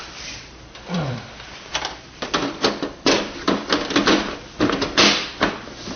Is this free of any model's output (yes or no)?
no